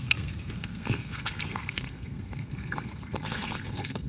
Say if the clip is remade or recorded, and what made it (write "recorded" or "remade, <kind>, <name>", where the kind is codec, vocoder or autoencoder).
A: remade, codec, SNAC